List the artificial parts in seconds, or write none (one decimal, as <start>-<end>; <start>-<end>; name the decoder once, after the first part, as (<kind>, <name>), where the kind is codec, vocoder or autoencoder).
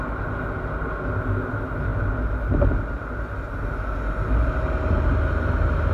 none